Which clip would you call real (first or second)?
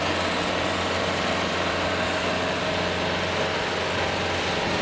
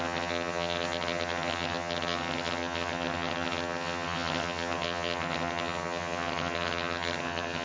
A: first